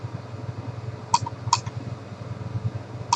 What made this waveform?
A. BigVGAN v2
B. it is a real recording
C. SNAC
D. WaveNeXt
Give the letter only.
B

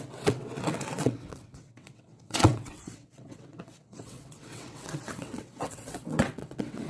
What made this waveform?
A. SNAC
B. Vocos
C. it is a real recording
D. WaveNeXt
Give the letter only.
D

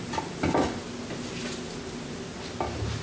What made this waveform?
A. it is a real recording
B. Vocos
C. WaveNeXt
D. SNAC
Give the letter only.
A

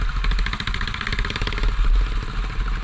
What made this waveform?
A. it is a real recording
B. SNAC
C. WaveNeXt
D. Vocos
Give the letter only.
A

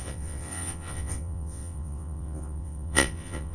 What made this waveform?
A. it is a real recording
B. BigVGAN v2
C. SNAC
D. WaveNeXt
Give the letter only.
D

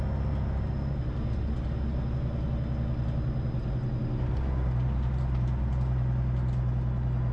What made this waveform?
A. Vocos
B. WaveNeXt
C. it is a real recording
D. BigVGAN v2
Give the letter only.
C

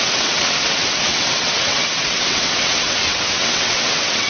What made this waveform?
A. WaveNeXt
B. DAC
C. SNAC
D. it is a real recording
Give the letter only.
A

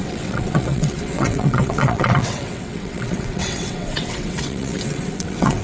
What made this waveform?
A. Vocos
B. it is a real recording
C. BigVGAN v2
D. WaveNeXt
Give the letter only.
D